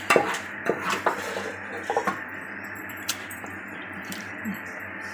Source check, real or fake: fake